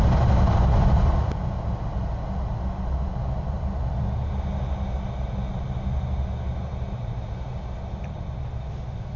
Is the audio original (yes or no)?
yes